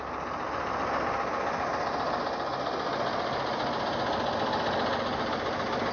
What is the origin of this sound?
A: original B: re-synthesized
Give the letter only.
A